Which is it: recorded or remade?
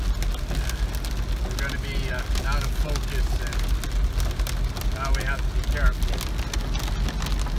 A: recorded